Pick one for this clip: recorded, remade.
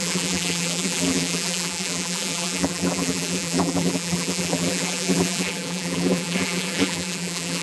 remade